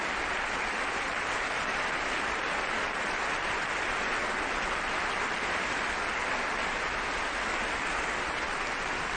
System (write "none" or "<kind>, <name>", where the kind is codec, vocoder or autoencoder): none